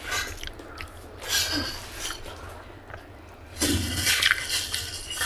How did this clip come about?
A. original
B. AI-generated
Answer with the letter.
A